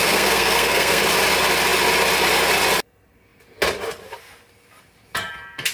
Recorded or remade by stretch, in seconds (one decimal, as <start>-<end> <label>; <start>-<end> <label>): 0.0-1.0 remade; 1.0-5.7 recorded